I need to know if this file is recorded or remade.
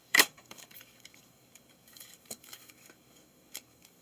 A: remade